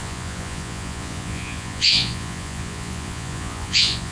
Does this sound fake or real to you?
fake